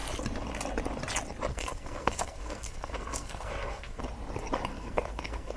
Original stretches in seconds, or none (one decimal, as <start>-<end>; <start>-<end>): 0.0-1.5; 4.0-4.7